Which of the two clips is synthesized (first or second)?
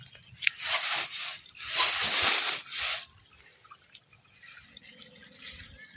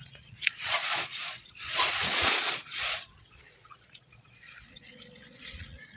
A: second